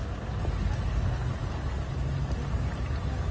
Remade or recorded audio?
recorded